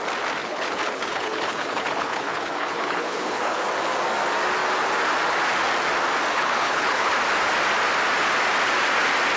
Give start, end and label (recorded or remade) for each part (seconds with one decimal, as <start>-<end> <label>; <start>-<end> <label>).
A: 0.0-0.4 recorded; 0.4-3.6 remade; 3.6-6.3 recorded; 6.3-7.1 remade; 7.1-9.4 recorded